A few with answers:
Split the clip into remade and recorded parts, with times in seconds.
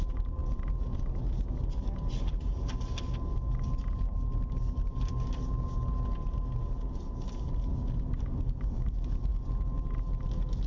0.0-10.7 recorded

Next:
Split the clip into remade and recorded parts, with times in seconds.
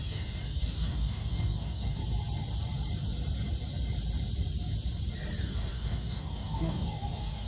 0.0-2.0 remade; 2.0-5.4 recorded; 5.4-7.5 remade